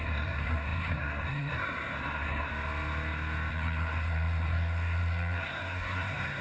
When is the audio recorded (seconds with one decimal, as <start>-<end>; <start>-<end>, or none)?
2.5-3.5